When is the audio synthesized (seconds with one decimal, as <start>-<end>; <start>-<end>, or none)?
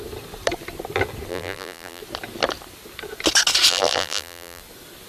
1.3-2.0; 3.7-4.6